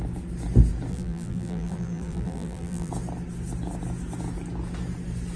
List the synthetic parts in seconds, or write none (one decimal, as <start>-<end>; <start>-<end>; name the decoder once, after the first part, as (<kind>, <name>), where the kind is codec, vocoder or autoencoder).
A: 0.9-2.9 (vocoder, BigVGAN v2)

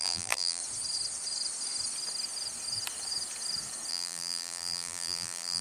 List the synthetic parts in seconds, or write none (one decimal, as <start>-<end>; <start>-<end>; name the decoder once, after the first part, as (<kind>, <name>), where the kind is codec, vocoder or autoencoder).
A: 0.0-0.6 (vocoder, BigVGAN v2); 3.9-5.6

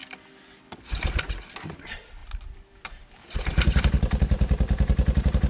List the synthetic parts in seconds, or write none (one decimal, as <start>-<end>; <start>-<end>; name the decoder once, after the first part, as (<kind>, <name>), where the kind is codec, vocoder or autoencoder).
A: 2.2-5.5 (vocoder, BigVGAN v2)

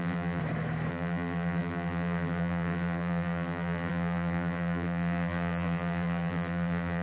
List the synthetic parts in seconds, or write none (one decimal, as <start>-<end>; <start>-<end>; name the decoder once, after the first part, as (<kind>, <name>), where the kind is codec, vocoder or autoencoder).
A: 0.0-0.4 (vocoder, BigVGAN v2); 0.9-7.0

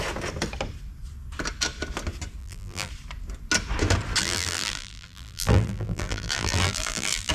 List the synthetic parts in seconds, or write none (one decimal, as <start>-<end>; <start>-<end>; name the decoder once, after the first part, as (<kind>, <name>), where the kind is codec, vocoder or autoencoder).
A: 2.4-2.9 (vocoder, BigVGAN v2); 4.2-7.3

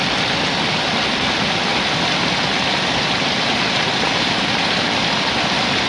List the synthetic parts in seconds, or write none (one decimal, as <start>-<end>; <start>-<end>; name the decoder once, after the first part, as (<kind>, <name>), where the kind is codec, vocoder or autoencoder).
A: 1.7-5.2 (vocoder, BigVGAN v2)